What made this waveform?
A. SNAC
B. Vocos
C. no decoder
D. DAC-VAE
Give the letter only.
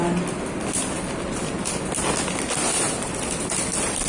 C